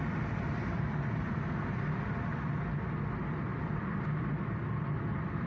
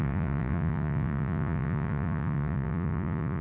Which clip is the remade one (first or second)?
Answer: second